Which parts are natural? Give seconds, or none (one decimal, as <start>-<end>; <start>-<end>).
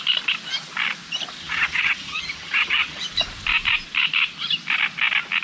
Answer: 0.0-1.4; 3.0-5.4